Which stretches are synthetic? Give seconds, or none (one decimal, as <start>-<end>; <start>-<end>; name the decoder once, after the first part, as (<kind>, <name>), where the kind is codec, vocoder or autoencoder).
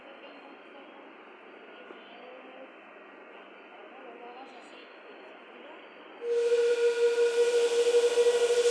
none